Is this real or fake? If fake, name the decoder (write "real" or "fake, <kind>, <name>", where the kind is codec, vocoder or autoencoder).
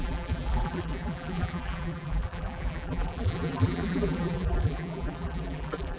fake, vocoder, BigVGAN v2